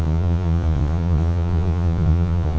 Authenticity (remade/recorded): remade